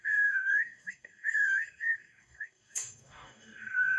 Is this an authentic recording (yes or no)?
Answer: no